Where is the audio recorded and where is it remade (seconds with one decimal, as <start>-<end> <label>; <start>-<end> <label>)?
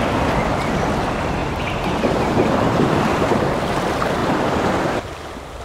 0.0-1.4 recorded; 1.4-3.5 remade; 3.5-4.2 recorded; 4.2-4.7 remade; 4.7-5.6 recorded